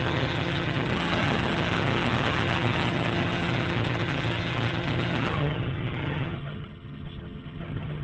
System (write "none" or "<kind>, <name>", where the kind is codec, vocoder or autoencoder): vocoder, HiFi-GAN